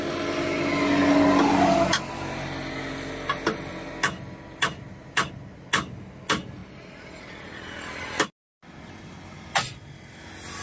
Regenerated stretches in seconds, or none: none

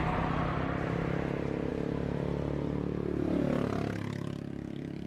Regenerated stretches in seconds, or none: none

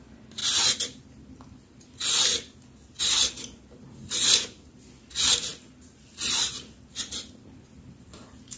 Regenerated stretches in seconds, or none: none

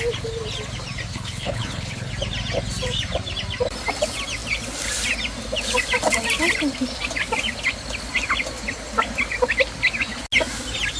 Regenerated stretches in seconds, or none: 1.1-2.1 (codec, HILCodec)

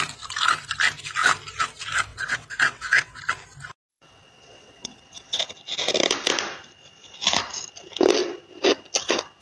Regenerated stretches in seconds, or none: 2.1-3.2 (vocoder, WaveNeXt); 3.9-5.4

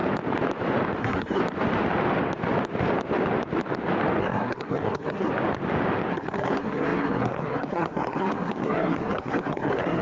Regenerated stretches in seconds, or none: 1.0-1.4 (codec, SNAC); 4.2-5.3; 6.1-10.0